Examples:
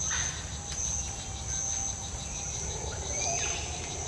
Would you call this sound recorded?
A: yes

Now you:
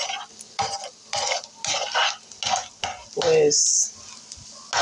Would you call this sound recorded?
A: yes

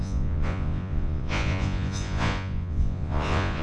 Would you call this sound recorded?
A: no